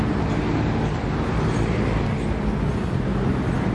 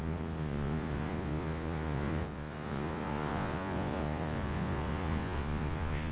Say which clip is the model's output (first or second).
second